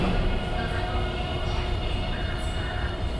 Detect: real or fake real